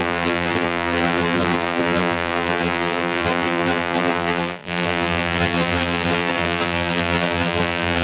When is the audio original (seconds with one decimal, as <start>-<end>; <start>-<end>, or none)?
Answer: none